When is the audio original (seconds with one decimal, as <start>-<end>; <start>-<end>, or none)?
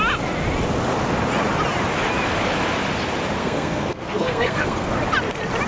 0.0-3.4; 4.9-5.7